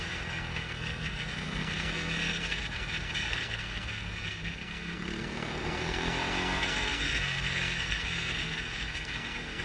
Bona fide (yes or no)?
no